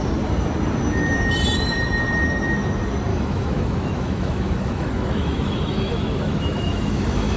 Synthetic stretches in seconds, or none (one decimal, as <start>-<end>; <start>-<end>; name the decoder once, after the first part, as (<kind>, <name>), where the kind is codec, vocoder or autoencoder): 3.1-7.4 (autoencoder, DAC-VAE)